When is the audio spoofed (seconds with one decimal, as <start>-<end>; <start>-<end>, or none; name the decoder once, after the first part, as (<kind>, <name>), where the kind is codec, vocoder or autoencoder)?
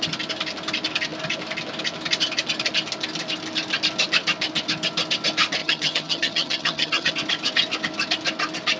5.6-7.1 (vocoder, HiFi-GAN)